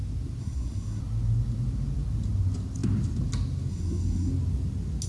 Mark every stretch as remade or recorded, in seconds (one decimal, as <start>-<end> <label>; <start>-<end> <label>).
0.0-0.4 recorded; 0.4-1.0 remade; 1.0-3.7 recorded; 3.7-4.3 remade; 4.3-5.1 recorded